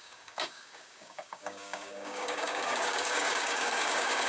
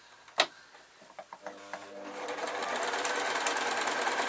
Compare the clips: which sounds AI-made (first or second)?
first